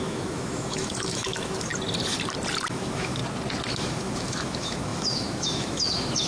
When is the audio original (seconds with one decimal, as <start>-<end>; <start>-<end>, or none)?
1.7-2.7; 3.2-3.7